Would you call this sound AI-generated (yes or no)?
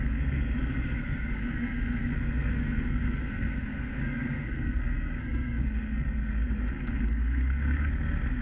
yes